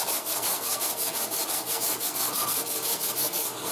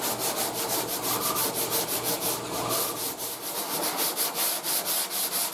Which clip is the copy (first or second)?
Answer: first